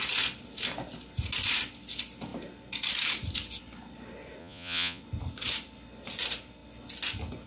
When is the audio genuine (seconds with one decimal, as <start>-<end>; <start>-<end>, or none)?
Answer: 0.0-4.4; 5.0-7.5